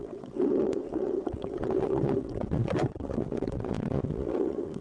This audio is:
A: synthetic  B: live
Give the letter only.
A